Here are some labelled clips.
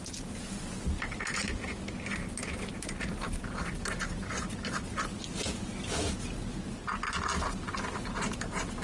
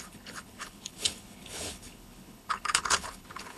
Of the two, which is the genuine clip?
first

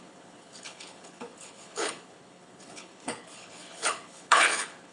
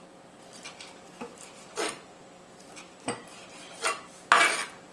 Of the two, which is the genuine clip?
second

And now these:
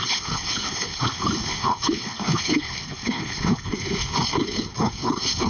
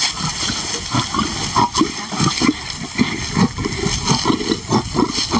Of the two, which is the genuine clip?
second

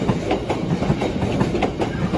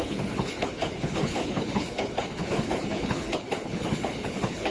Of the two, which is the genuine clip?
first